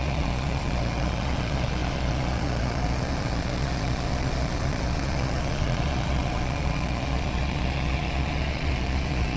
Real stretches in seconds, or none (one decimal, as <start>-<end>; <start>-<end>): none